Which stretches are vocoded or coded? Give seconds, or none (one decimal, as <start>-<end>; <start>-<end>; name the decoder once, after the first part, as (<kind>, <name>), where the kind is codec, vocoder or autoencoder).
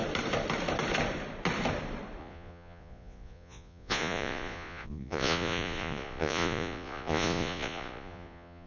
2.2-8.7 (vocoder, Vocos)